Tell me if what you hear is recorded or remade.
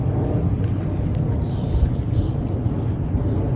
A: recorded